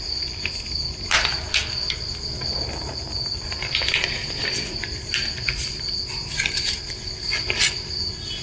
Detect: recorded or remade recorded